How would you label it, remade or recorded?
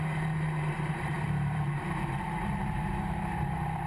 remade